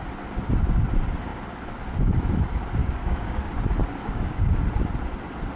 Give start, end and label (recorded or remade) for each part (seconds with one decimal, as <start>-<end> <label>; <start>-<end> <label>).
0.0-2.8 recorded; 2.8-3.4 remade; 3.4-4.0 recorded; 4.0-4.6 remade; 4.6-5.6 recorded